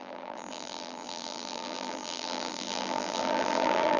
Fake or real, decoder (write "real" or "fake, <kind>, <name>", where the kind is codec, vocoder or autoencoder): fake, vocoder, BigVGAN v2